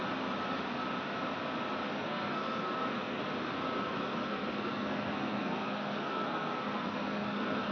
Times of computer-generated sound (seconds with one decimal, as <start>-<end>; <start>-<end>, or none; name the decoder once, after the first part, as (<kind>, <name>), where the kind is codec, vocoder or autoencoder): 1.9-3.2 (codec, SNAC); 3.8-7.7